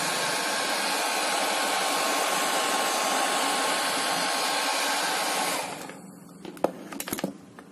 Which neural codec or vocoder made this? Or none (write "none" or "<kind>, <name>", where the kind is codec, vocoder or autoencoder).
none